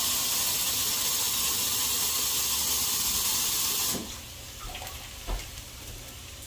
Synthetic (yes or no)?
no